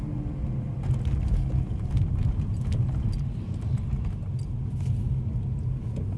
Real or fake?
real